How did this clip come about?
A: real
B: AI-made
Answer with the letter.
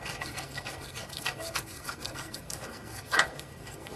B